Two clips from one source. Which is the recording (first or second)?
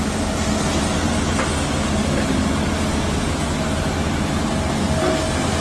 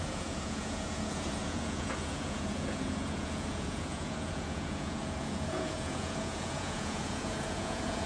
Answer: first